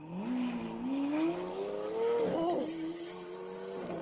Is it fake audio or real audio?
real